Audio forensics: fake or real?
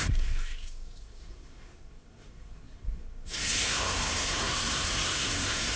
fake